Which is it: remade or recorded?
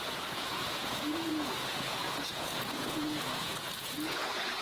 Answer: remade